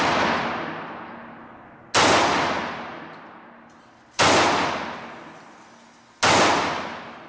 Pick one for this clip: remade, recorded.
recorded